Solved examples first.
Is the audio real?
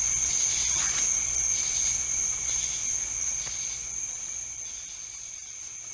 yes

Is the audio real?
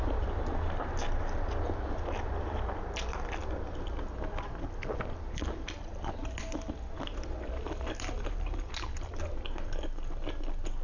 yes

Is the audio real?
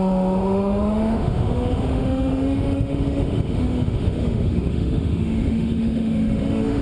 no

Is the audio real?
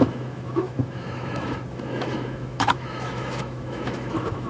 no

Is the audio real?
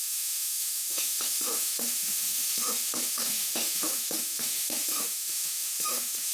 no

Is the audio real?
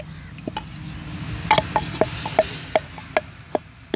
yes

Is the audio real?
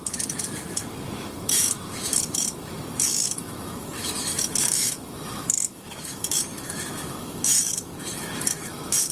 no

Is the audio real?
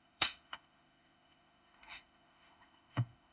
no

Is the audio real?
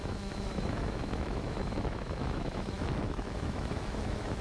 no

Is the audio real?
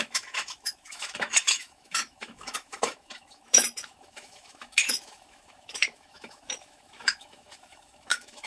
no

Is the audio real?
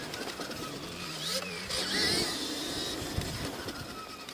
yes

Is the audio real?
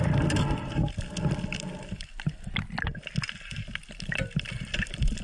yes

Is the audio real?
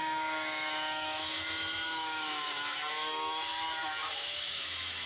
no